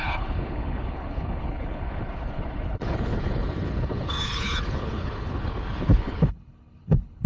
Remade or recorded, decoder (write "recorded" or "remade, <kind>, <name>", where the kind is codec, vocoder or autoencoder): remade, codec, HILCodec